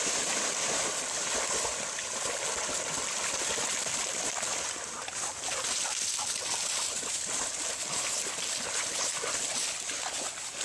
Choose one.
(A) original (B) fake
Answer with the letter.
A